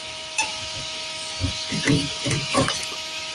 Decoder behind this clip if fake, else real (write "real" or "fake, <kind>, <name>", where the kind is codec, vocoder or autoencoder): fake, autoencoder, DAC-VAE